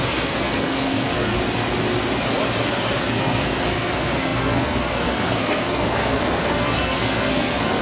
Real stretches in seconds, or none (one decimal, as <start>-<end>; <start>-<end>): 1.3-3.0